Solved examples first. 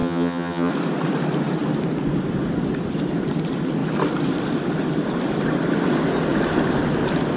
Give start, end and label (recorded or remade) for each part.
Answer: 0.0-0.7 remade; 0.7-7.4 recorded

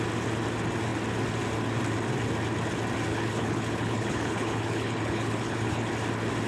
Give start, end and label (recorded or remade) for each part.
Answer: 0.0-3.1 recorded; 3.1-5.8 remade; 5.8-6.5 recorded

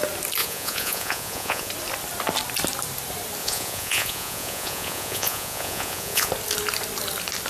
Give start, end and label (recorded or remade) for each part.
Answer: 0.0-0.4 recorded; 0.4-1.7 remade; 1.7-3.4 recorded; 3.4-6.3 remade; 6.3-7.5 recorded

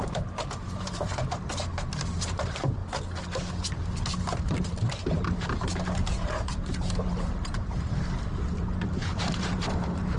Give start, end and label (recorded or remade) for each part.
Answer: 0.0-2.8 remade; 2.8-4.4 recorded; 4.4-10.2 remade

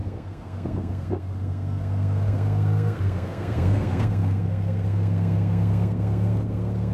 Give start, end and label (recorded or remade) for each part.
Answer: 0.0-6.9 remade

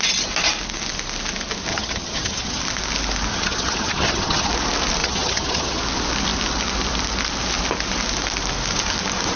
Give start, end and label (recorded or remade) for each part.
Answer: 0.0-1.7 recorded; 1.7-2.6 remade; 2.6-3.3 recorded; 3.3-4.5 remade; 4.5-5.0 recorded; 5.0-5.8 remade; 5.8-9.4 recorded

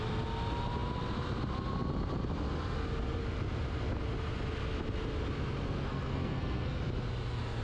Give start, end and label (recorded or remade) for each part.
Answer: 0.0-5.9 recorded; 5.9-6.8 remade; 6.8-7.6 recorded